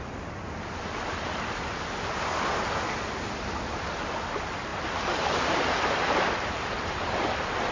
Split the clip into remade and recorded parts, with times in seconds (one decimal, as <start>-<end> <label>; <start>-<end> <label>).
0.0-7.7 recorded